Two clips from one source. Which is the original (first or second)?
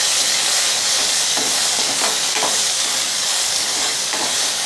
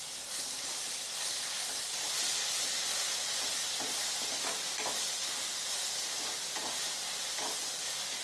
second